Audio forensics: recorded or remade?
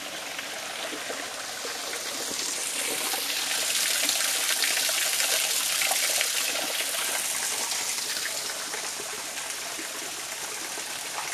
recorded